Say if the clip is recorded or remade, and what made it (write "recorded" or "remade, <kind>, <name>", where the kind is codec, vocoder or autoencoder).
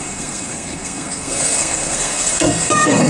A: remade, codec, SNAC